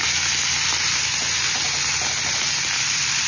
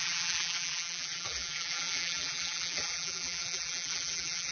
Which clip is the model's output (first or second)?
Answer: second